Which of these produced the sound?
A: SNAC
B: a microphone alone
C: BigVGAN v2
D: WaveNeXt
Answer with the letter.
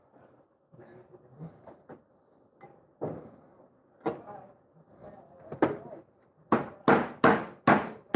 B